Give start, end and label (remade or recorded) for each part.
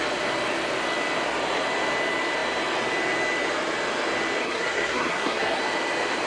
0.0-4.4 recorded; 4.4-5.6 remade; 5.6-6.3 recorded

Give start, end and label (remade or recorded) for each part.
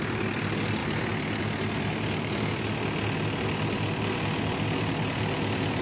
0.0-5.8 recorded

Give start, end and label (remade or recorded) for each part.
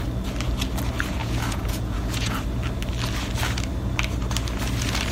0.0-1.2 recorded; 1.2-2.4 remade; 2.4-5.1 recorded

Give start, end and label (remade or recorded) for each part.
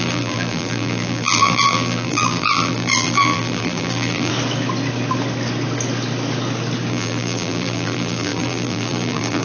0.0-4.3 remade; 4.3-6.9 recorded; 6.9-9.4 remade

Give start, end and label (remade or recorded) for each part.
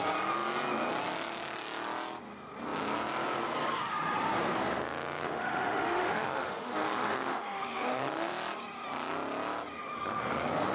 0.0-5.2 recorded; 5.2-8.3 remade; 8.3-10.7 recorded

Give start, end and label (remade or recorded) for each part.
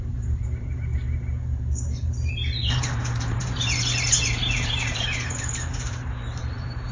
0.0-0.9 remade; 0.9-2.0 recorded; 2.0-6.9 remade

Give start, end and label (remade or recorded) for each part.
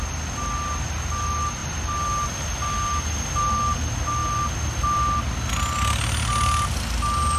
0.0-7.4 recorded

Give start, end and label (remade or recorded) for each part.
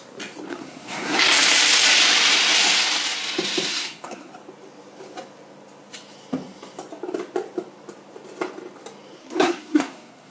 0.0-0.5 recorded; 0.5-1.2 remade; 1.2-3.7 recorded; 3.7-4.3 remade; 4.3-9.2 recorded; 9.2-10.3 remade